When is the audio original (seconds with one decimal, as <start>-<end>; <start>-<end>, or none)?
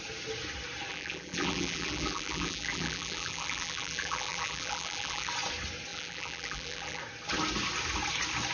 0.0-0.9; 5.3-5.9; 7.0-8.5